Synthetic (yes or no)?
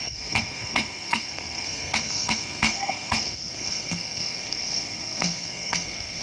yes